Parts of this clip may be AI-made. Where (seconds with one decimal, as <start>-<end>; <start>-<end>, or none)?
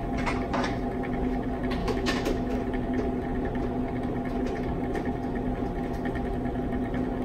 1.8-2.6